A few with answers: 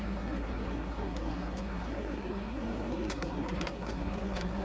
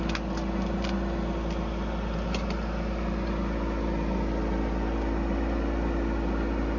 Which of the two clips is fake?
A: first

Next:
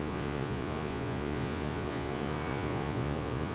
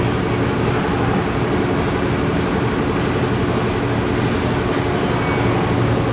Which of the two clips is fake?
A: first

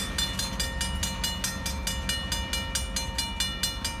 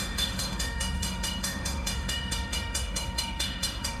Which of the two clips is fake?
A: second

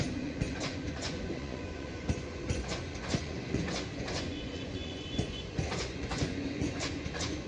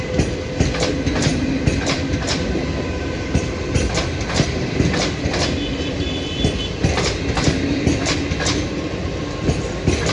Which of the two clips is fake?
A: first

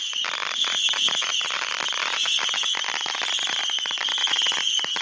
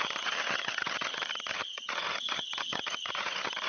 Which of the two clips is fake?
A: second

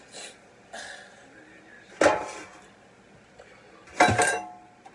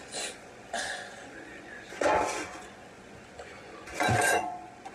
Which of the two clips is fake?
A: second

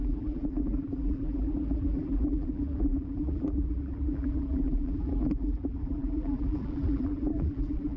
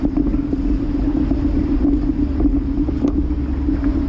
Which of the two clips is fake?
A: first